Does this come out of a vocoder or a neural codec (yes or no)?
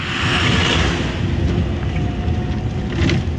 no